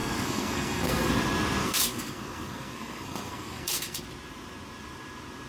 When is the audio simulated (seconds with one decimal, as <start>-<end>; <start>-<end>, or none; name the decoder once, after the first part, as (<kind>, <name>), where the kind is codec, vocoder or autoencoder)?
0.0-1.1 (codec, SNAC); 1.6-4.0